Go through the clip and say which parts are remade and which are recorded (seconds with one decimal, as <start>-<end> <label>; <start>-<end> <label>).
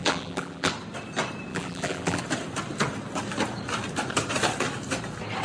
0.0-0.7 remade; 0.7-1.5 recorded; 1.5-2.2 remade; 2.2-5.4 recorded